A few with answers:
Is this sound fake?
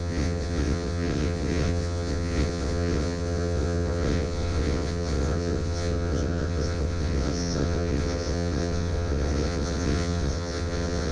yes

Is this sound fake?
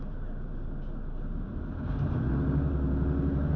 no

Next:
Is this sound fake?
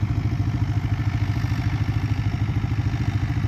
no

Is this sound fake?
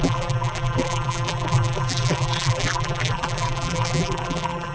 yes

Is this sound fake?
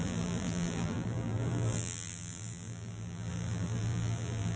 yes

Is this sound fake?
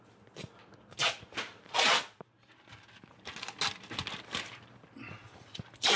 no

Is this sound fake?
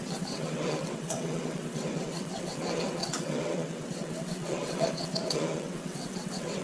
yes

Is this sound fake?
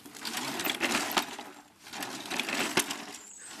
no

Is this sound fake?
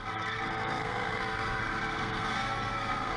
yes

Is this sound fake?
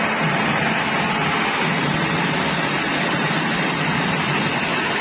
no